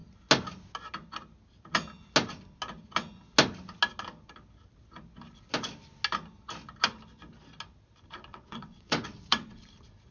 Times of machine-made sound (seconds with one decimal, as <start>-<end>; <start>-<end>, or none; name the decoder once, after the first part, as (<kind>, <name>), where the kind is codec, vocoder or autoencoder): 8.3-9.6 (vocoder, WaveNeXt)